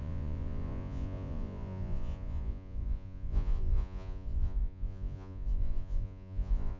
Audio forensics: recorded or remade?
remade